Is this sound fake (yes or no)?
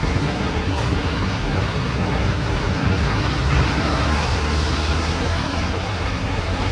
yes